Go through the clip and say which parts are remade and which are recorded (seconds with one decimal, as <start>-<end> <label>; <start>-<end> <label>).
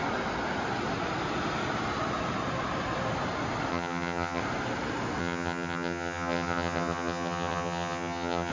0.0-3.7 recorded; 3.7-4.4 remade; 4.4-5.2 recorded; 5.2-8.5 remade